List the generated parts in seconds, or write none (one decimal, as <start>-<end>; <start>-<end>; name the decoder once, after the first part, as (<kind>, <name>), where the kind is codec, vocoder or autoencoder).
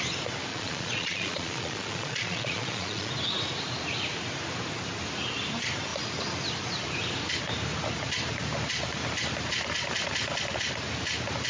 0.5-3.1 (vocoder, Vocos)